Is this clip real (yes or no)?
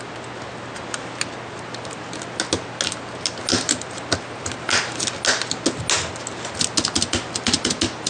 yes